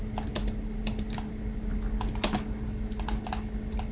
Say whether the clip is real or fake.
real